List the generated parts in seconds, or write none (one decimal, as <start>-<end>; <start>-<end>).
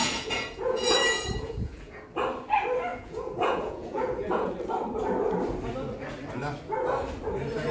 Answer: 0.0-2.0; 2.9-4.5